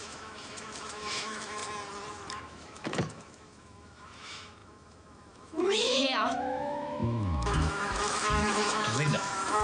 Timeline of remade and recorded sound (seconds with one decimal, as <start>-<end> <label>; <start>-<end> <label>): 0.0-1.6 remade; 1.6-2.3 recorded; 2.3-9.6 remade